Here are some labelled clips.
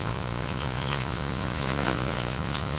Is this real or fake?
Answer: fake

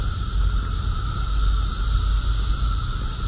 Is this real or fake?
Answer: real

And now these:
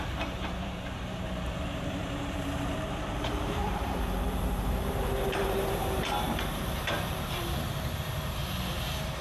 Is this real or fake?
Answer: fake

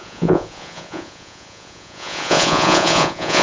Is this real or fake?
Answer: fake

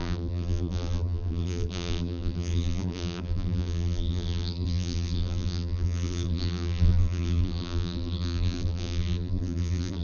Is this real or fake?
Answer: fake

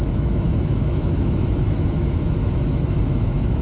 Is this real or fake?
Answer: fake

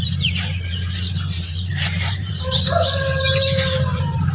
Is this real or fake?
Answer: fake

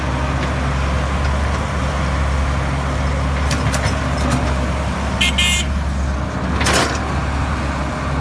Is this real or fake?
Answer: real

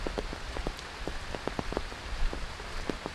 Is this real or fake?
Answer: real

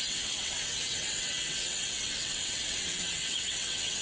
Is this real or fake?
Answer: fake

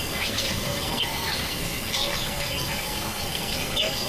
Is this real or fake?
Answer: fake